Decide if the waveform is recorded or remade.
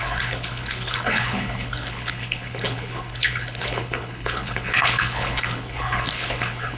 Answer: remade